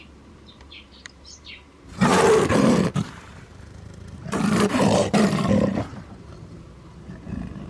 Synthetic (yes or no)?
yes